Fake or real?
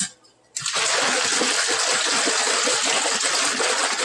real